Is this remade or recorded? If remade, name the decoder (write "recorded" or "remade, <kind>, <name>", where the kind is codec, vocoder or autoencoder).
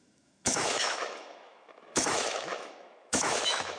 remade, autoencoder, DAC-VAE